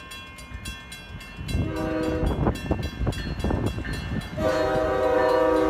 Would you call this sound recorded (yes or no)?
yes